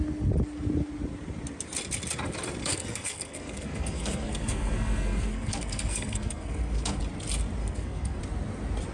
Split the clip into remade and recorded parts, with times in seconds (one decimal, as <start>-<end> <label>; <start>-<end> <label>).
0.0-2.6 recorded; 2.6-7.0 remade; 7.0-7.6 recorded; 7.6-8.2 remade; 8.2-8.9 recorded